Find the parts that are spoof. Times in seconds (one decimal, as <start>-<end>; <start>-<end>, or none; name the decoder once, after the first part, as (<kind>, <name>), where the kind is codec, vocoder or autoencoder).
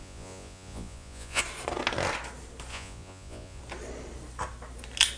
0.0-1.4 (vocoder, Vocos); 2.7-3.6